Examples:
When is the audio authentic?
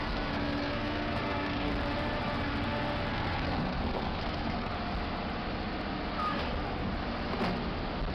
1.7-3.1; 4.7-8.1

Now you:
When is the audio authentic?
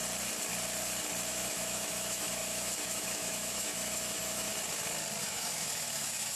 0.0-1.3; 4.5-5.2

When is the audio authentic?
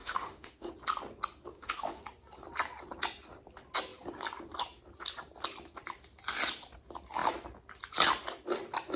0.7-1.5; 2.0-9.0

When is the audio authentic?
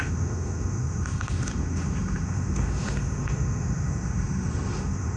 none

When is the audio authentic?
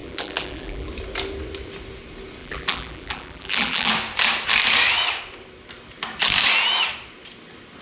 0.9-2.4; 3.9-7.8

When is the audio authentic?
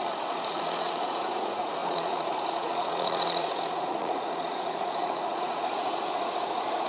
none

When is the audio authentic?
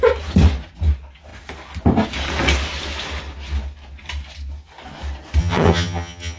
0.0-5.4